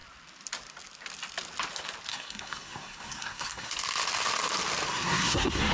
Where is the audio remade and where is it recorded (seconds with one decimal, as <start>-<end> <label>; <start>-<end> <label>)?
0.0-2.1 recorded; 2.1-3.7 remade; 3.7-4.9 recorded; 4.9-5.7 remade